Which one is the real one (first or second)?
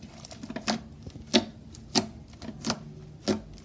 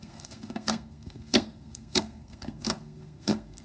first